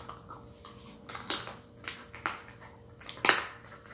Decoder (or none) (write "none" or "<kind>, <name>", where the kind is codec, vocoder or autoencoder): none